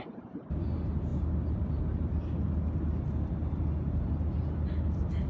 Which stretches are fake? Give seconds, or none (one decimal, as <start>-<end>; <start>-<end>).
none